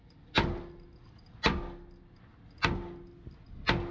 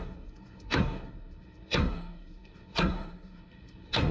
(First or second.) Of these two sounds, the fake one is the second